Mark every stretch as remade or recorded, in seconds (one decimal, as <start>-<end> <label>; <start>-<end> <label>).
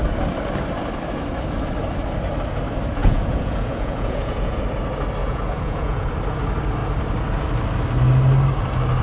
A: 0.0-3.0 recorded; 3.0-4.6 remade; 4.6-5.2 recorded; 5.2-6.1 remade; 6.1-9.0 recorded